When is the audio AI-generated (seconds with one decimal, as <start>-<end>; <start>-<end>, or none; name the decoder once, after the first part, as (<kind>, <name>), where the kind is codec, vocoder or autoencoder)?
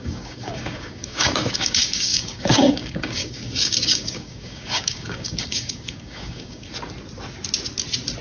0.0-6.7 (codec, DAC)